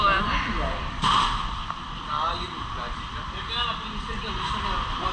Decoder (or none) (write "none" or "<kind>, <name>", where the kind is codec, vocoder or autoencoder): none